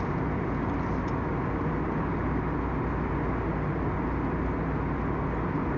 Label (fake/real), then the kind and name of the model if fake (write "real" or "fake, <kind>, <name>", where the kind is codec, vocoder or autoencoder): real